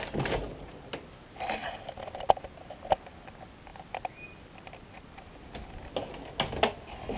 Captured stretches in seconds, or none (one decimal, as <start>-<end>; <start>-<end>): 0.0-7.2